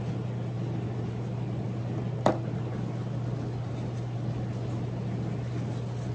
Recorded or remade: recorded